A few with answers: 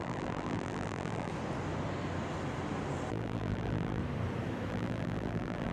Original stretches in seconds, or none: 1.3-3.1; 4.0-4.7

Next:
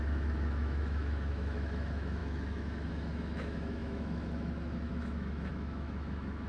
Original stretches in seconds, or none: none

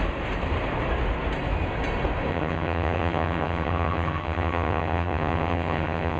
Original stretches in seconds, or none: 0.0-2.3

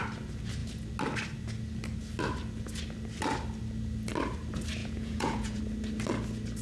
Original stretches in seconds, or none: 0.0-4.8; 5.6-6.6

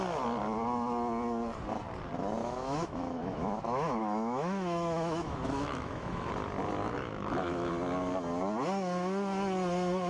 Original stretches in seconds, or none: 0.0-2.4; 6.3-6.8; 7.7-10.1

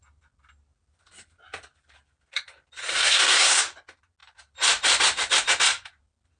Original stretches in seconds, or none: 0.0-2.8; 3.6-6.4